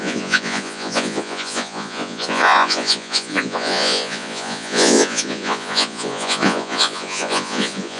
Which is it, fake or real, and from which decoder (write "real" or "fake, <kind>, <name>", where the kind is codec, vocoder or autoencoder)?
fake, vocoder, Vocos